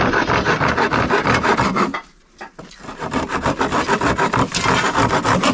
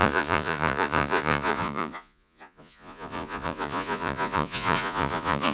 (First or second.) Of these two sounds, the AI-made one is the second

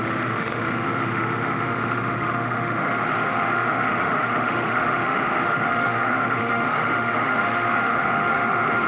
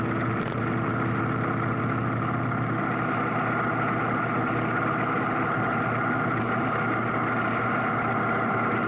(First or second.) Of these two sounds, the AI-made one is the first